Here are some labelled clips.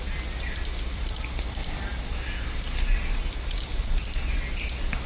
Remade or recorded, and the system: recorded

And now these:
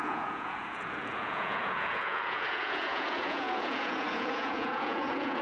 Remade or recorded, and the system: remade, vocoder, Vocos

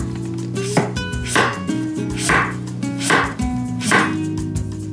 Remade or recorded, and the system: recorded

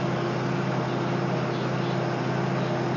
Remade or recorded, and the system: recorded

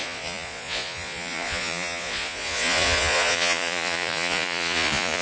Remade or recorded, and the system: remade, vocoder, Vocos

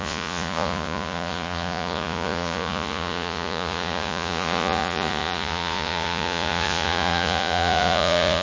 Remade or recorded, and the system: remade, vocoder, Vocos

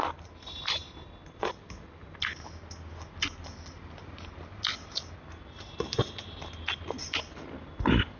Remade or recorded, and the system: recorded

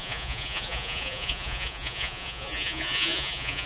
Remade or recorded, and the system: remade, vocoder, Vocos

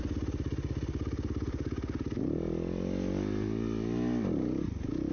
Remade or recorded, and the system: recorded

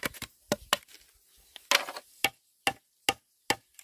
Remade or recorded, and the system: recorded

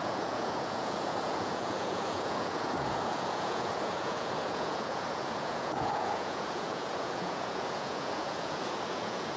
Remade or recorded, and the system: remade, vocoder, Vocos